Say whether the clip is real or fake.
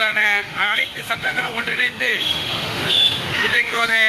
fake